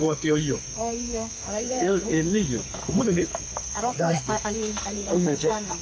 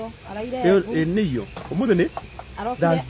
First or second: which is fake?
first